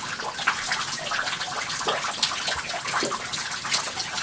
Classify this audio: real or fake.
real